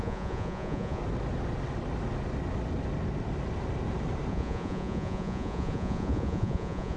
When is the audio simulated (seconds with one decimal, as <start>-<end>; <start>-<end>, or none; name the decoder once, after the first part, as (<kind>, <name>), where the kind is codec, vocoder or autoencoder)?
0.0-1.0 (vocoder, Vocos); 4.3-7.0